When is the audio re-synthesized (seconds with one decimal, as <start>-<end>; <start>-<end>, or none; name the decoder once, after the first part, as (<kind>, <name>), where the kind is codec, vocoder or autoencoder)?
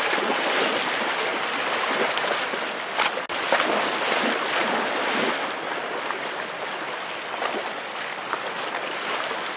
none